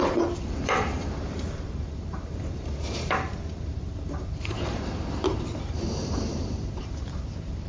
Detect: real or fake fake